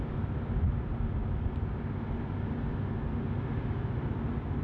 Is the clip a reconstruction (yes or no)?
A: no